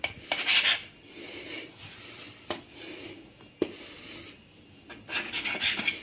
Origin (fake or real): real